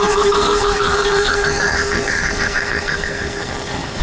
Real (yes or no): no